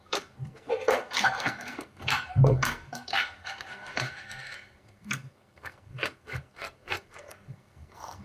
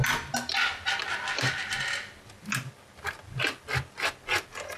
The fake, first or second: first